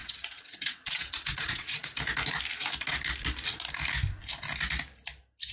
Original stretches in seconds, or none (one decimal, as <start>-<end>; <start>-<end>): 1.9-5.5